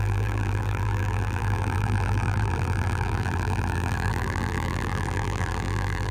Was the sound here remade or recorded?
remade